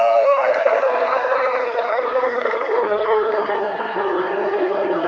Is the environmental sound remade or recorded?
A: remade